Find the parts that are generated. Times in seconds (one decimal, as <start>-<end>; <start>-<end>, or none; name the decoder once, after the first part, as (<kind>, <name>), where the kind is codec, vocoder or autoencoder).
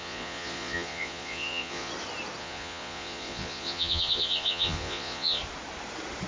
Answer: 0.0-1.9 (vocoder, Vocos); 2.4-5.4